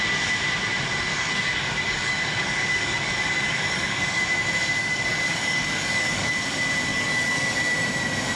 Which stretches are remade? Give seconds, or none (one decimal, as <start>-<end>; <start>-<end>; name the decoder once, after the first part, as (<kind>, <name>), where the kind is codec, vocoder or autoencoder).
1.1-4.2 (codec, DAC); 4.8-6.3; 6.9-7.6